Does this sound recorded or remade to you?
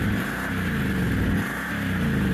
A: recorded